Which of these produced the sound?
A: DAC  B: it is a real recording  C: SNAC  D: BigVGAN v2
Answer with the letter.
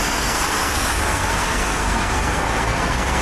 C